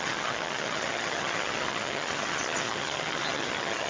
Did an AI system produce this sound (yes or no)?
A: yes